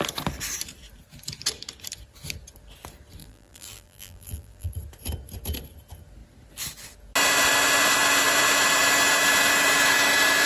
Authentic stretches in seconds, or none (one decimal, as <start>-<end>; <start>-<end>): 0.0-3.2; 4.7-10.5